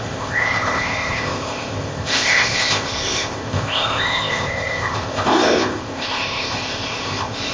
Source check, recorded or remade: remade